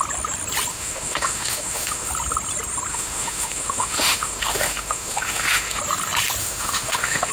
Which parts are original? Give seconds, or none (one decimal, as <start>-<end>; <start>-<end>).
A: 0.0-0.7; 2.1-2.9; 5.8-6.4

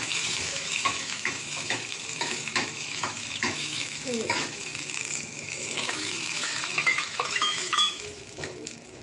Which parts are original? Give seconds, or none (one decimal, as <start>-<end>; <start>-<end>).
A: none

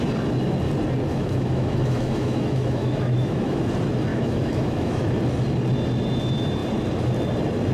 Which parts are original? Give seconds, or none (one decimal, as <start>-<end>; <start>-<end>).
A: 0.0-1.1; 3.6-4.1; 5.1-7.7

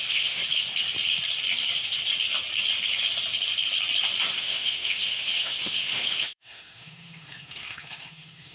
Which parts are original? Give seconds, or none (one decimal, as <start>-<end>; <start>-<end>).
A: 0.4-4.4

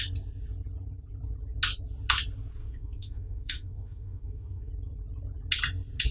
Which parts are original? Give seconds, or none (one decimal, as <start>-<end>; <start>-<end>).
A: 0.0-2.6; 4.7-6.1